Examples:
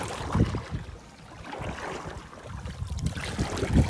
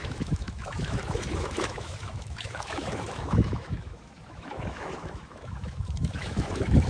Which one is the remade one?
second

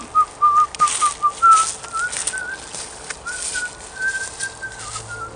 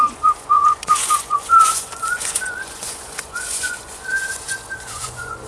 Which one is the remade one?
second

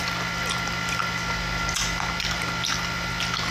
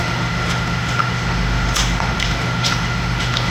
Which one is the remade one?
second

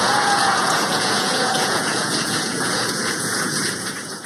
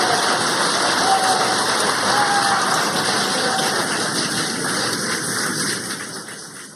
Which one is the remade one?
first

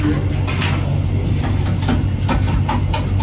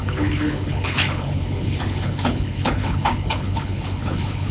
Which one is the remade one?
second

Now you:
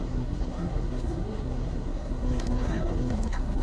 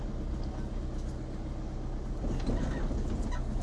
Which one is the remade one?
first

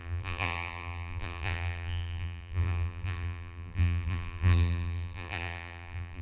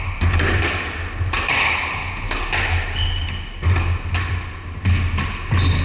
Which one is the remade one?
first